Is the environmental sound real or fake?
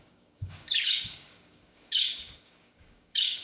fake